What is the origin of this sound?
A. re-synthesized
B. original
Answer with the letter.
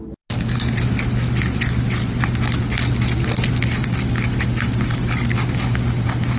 B